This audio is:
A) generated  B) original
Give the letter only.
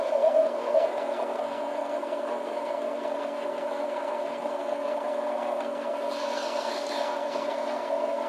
A